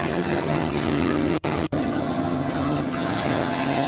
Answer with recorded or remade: remade